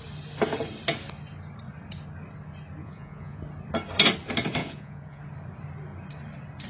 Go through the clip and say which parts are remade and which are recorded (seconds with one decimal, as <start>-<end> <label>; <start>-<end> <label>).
0.0-2.8 recorded; 2.8-3.4 remade; 3.4-4.6 recorded; 4.6-5.2 remade; 5.2-6.7 recorded